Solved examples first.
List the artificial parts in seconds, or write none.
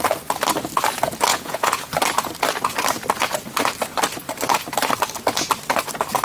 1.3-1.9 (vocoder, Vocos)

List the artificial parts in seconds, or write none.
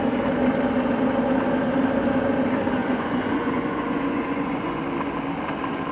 2.8-4.8 (vocoder, Vocos)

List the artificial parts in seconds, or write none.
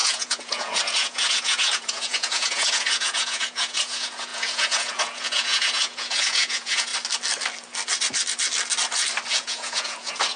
0.0-6.9 (vocoder, Vocos); 9.3-10.4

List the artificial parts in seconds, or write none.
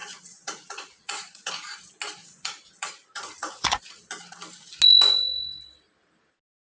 0.0-1.5 (vocoder, Vocos); 2.2-4.0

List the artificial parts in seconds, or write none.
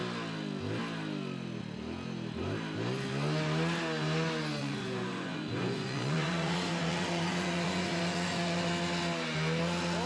4.6-8.7 (vocoder, Vocos)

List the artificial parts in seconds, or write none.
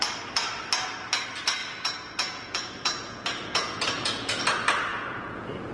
1.6-4.4 (vocoder, Vocos); 4.9-5.7